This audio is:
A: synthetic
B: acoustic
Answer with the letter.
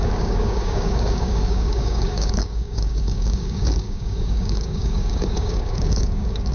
A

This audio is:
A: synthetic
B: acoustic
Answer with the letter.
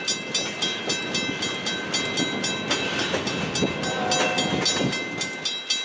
B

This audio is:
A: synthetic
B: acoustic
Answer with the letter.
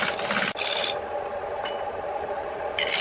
B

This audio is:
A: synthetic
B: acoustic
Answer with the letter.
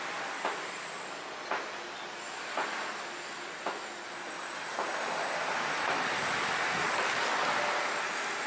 B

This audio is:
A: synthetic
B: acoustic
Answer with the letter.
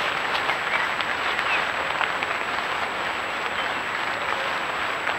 B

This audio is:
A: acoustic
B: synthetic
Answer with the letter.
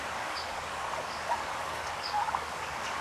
B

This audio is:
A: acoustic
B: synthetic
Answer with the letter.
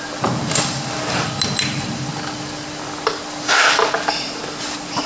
A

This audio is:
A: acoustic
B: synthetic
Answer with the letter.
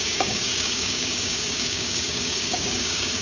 B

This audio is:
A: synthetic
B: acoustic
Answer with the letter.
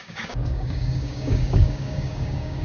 A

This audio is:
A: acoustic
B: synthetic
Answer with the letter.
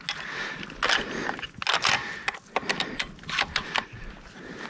A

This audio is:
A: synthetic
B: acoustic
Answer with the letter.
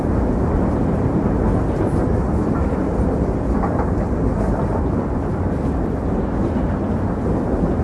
B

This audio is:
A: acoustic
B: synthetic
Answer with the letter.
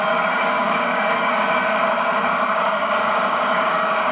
B